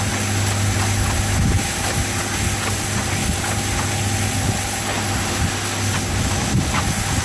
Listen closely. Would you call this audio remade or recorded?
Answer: recorded